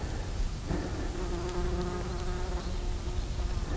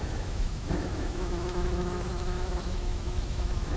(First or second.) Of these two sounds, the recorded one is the first